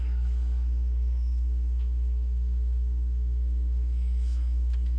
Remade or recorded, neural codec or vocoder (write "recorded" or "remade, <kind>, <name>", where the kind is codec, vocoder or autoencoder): remade, codec, SNAC